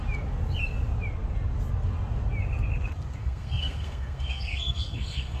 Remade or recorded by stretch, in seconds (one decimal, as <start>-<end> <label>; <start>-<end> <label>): 0.0-3.2 recorded; 3.2-5.4 remade